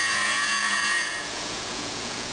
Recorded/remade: remade